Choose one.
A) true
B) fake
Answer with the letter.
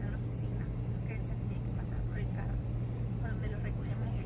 A